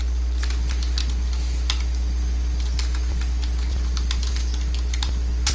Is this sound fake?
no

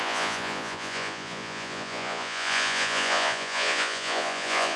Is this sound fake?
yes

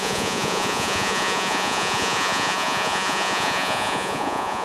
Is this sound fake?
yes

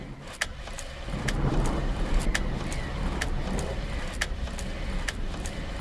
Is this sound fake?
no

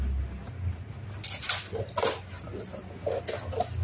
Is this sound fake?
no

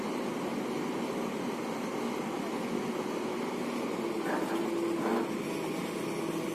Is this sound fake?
no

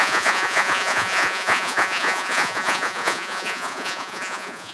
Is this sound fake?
yes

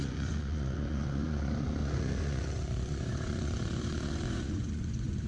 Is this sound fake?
yes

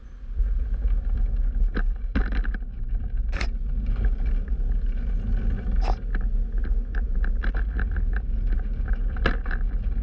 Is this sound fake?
no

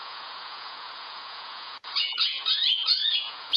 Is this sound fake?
yes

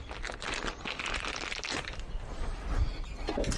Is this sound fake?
no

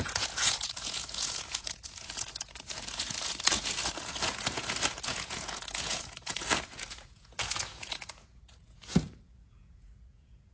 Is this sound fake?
yes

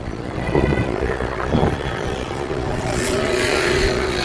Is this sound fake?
yes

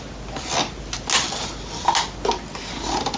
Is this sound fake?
no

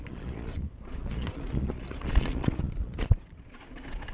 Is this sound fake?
yes